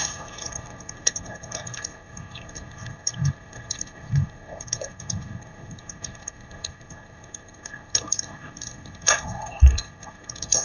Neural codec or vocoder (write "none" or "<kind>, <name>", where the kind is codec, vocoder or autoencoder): codec, SNAC